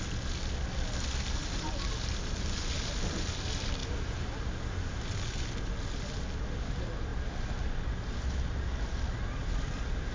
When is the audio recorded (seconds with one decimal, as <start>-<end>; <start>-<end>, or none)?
0.0-10.1